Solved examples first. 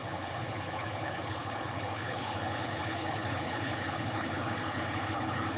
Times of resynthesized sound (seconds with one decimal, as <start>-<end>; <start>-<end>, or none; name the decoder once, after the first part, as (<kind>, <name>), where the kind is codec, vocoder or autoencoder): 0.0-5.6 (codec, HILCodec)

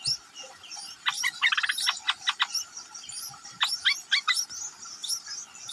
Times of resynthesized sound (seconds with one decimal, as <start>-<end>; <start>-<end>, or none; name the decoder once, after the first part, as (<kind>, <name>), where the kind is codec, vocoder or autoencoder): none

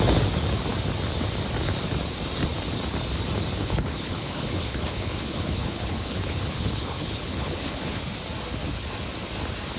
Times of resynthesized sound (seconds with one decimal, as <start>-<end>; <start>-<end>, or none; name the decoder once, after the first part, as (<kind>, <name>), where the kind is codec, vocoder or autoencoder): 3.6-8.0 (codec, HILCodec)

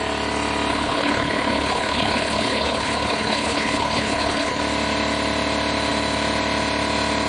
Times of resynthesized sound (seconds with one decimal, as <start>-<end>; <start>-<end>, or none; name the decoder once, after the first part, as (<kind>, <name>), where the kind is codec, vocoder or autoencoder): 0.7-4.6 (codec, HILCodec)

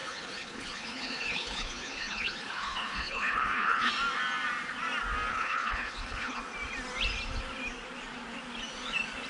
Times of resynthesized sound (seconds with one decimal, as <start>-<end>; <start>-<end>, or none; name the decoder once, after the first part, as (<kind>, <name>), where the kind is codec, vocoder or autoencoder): 0.0-3.9 (codec, HILCodec); 5.3-6.4

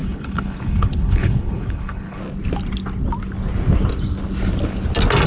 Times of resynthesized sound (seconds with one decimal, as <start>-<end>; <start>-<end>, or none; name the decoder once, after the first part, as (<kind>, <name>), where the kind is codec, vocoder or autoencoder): 0.0-2.2 (codec, HILCodec)